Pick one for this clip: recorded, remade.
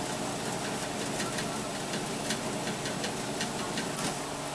recorded